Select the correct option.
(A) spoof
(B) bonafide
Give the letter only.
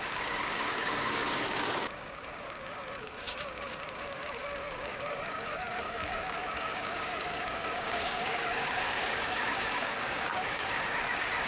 A